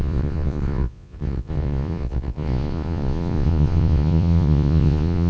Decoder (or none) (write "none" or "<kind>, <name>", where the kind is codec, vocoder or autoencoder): vocoder, Vocos